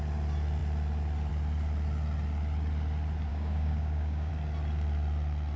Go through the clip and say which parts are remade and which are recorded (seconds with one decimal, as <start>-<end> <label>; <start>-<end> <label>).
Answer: 0.0-3.3 recorded; 3.3-4.3 remade; 4.3-5.6 recorded

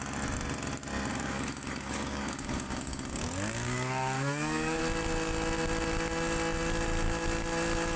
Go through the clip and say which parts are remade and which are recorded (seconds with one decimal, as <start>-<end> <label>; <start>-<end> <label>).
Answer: 0.0-1.1 recorded; 1.1-4.8 remade; 4.8-8.0 recorded

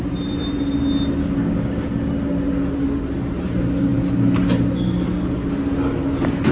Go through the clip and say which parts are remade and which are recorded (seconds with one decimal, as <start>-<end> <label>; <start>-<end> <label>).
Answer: 0.0-1.2 recorded; 1.2-1.9 remade; 1.9-6.5 recorded